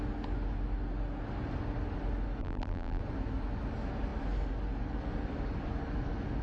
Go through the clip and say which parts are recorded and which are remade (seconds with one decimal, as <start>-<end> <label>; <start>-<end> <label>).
0.0-2.4 recorded; 2.4-3.0 remade; 3.0-6.4 recorded